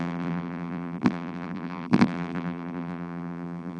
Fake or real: fake